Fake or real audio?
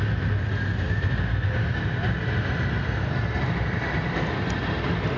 real